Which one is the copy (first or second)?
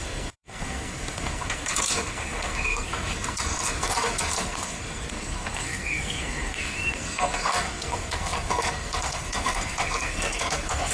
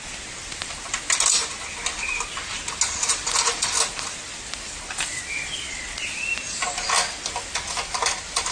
first